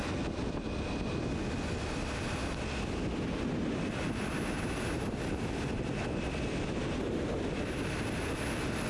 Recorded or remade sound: recorded